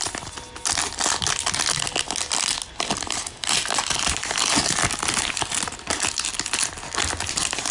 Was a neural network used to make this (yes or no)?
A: no